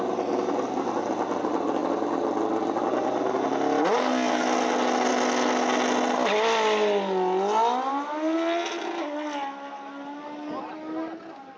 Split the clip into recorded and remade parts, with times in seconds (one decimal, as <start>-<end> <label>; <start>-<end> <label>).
0.0-11.6 recorded